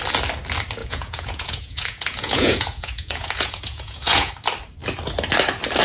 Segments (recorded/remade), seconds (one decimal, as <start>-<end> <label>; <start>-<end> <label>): 0.0-0.8 recorded; 0.8-4.3 remade; 4.3-5.8 recorded